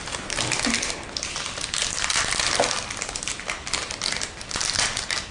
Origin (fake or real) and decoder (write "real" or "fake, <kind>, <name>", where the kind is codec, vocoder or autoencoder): real